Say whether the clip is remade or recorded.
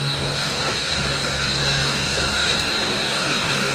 remade